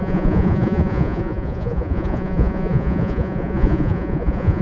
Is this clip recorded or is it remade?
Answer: remade